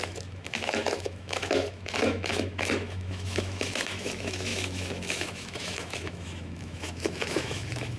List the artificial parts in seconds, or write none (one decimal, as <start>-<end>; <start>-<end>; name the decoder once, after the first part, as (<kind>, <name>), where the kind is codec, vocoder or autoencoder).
0.0-8.0 (autoencoder, DAC-VAE)